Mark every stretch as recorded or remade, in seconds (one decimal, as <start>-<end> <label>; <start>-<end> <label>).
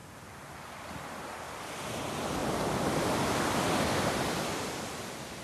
0.0-5.4 recorded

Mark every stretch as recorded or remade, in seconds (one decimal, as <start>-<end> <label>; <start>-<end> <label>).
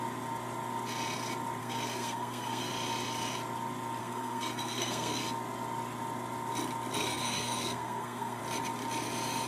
0.0-1.6 recorded; 1.6-2.7 remade; 2.7-4.0 recorded; 4.0-5.2 remade; 5.2-7.0 recorded; 7.0-8.4 remade; 8.4-9.5 recorded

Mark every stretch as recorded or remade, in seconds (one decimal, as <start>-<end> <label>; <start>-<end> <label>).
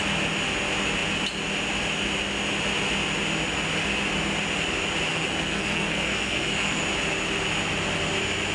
0.0-5.1 recorded; 5.1-6.8 remade; 6.8-8.5 recorded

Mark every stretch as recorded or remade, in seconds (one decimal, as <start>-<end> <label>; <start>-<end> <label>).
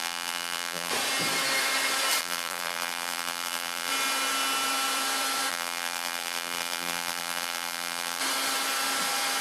0.0-0.9 remade; 0.9-2.2 recorded; 2.2-3.9 remade; 3.9-5.5 recorded; 5.5-8.2 remade; 8.2-9.4 recorded